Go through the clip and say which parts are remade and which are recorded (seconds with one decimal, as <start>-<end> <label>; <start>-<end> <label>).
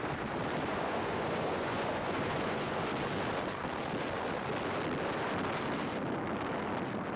0.0-0.7 recorded; 0.7-2.8 remade; 2.8-7.2 recorded